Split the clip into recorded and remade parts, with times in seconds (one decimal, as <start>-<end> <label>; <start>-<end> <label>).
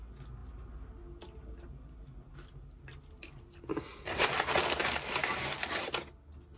0.0-6.6 recorded